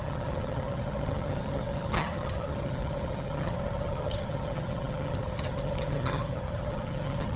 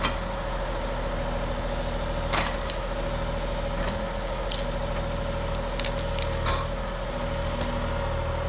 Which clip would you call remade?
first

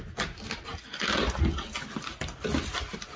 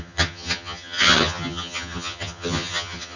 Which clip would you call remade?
second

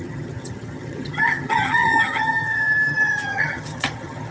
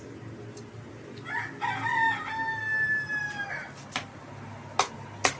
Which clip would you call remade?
first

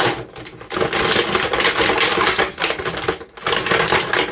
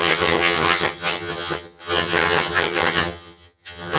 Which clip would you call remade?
second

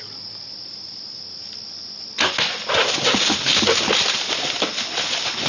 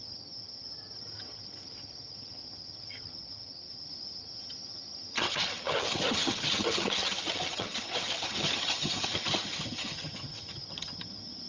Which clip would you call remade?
second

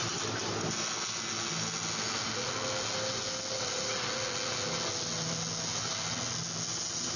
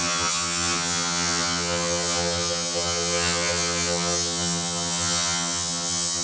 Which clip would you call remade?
second